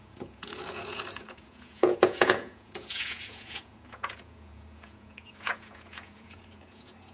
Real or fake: fake